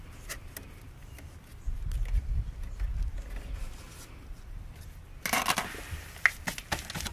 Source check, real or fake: real